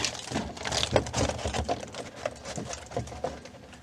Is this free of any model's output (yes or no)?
yes